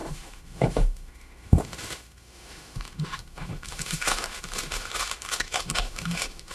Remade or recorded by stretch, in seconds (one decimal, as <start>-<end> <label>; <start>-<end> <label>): 0.0-6.5 remade